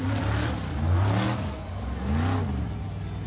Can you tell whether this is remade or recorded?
recorded